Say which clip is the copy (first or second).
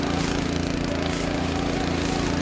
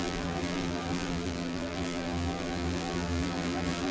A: second